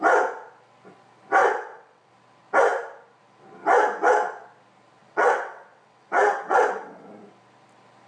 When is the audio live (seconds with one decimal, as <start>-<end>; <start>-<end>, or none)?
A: 0.0-1.4; 2.1-5.0; 7.1-8.1